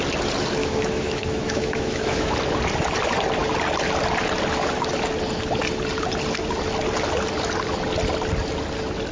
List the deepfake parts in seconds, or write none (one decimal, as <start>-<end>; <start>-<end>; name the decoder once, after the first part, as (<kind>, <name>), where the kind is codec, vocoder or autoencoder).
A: 0.6-2.3 (autoencoder, DAC-VAE)